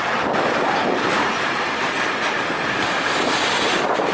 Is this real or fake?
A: real